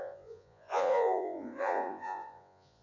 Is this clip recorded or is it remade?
remade